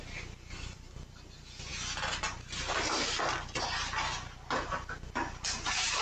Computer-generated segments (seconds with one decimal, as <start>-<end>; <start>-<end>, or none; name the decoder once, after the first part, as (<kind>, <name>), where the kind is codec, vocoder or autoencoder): none